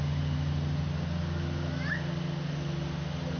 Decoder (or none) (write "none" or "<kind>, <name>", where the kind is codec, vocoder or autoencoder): none